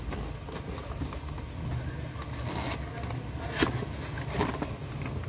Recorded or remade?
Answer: recorded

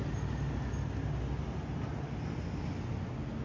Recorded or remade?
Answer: recorded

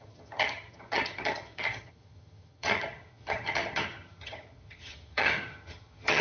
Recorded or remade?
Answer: remade